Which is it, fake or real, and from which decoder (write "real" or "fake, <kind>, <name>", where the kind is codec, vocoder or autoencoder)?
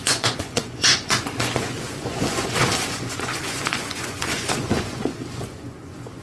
fake, vocoder, Vocos